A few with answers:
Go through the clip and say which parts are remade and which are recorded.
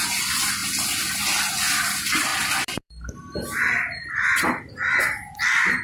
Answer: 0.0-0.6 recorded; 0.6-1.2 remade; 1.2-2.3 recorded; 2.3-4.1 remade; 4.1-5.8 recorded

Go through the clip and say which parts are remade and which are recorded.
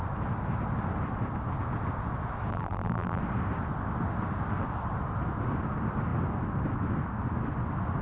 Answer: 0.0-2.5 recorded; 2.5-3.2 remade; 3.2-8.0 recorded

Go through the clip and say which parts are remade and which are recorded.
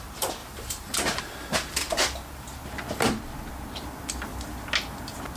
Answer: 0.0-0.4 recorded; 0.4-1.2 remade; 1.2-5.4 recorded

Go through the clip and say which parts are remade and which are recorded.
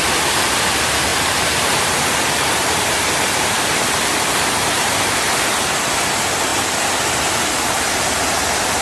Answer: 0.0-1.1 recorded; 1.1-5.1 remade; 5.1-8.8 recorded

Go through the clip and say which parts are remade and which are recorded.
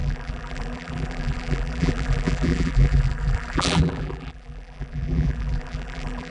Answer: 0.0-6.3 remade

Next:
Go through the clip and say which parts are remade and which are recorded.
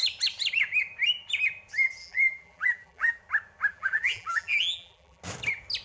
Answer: 0.0-2.0 recorded; 2.0-3.2 remade; 3.2-3.7 recorded; 3.7-5.2 remade; 5.2-5.8 recorded